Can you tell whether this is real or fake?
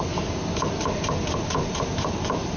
real